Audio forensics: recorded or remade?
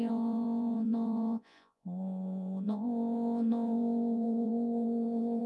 remade